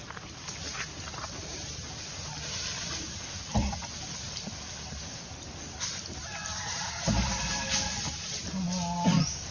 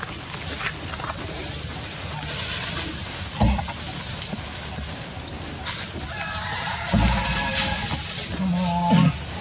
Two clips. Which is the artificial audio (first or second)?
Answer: first